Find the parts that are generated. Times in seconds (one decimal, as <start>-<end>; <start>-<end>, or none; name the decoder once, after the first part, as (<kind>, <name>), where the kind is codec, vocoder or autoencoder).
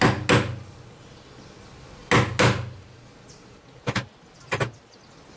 none